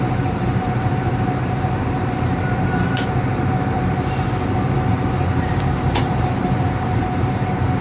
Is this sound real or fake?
fake